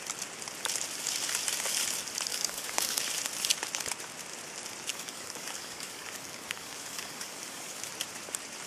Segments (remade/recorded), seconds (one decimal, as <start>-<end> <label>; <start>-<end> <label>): 0.0-2.3 recorded; 2.3-3.0 remade; 3.0-4.9 recorded; 4.9-7.9 remade; 7.9-8.7 recorded